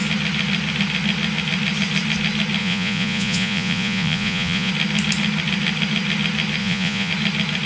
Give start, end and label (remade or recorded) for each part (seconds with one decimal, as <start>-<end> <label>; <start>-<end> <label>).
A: 0.0-2.6 recorded; 2.6-4.7 remade; 4.7-6.6 recorded; 6.6-7.1 remade; 7.1-7.7 recorded